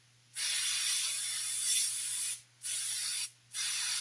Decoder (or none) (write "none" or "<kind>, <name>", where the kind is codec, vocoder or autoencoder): none